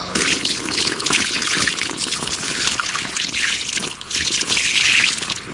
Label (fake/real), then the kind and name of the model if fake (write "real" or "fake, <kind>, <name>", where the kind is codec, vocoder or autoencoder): fake, codec, HILCodec